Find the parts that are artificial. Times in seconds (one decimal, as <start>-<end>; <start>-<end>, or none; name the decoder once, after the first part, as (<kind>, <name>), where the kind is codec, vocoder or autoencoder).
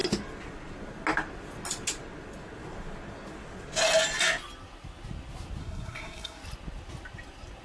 5.6-6.4 (codec, SNAC)